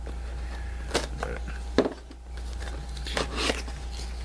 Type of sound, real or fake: real